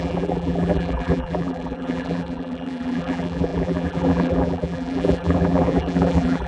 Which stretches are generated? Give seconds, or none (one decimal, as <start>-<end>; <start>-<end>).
0.0-6.5